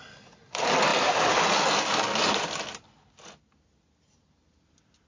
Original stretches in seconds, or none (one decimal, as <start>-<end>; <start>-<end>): 0.0-5.1